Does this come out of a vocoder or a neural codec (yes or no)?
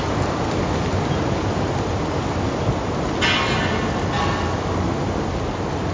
no